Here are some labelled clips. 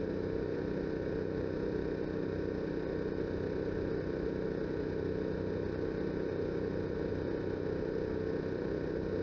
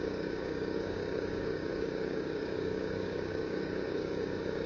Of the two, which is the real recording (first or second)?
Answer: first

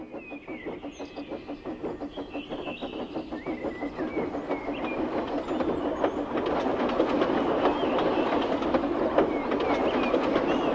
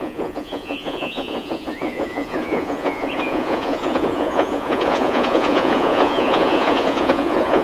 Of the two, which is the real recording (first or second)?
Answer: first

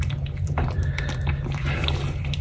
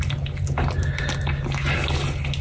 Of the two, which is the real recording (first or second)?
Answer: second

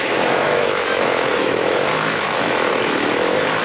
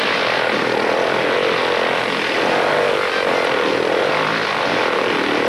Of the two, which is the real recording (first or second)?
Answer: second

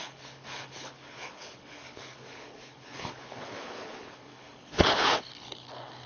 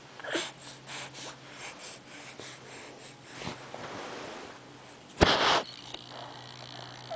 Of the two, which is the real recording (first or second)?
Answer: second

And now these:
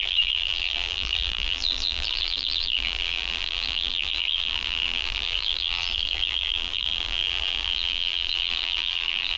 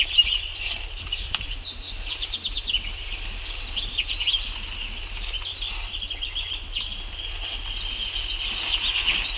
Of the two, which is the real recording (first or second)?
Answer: second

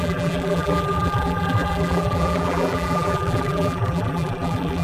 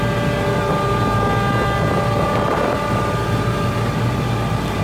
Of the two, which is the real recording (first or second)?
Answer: second